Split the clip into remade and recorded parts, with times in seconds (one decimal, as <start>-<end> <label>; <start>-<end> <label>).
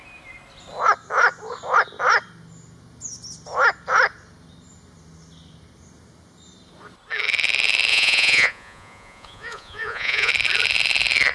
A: 0.0-7.9 recorded; 7.9-10.3 remade; 10.3-11.3 recorded